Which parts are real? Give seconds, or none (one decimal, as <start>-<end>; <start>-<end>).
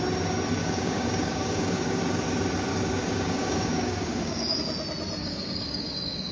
0.0-0.6; 2.0-2.7; 4.6-5.2